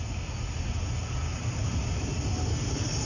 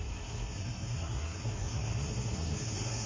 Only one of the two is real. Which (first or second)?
first